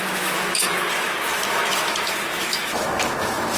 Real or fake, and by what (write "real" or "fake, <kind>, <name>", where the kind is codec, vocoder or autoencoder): fake, autoencoder, DAC-VAE